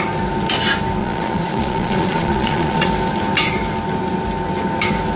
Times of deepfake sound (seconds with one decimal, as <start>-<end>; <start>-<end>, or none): 1.0-2.9